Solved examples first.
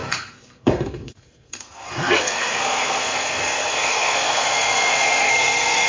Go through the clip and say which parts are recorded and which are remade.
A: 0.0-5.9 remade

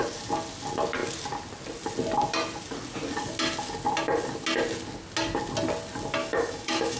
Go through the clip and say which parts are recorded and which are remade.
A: 0.0-6.2 recorded; 6.2-7.0 remade